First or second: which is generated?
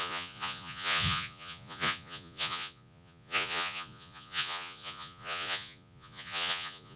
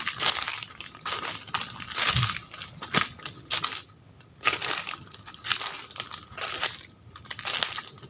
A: first